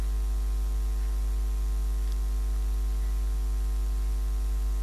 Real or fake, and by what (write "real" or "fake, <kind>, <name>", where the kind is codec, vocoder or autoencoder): real